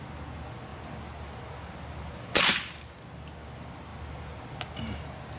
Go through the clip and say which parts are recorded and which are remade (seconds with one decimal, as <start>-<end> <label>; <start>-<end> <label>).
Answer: 0.0-5.4 recorded